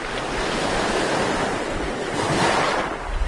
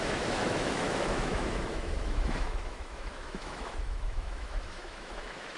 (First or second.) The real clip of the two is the first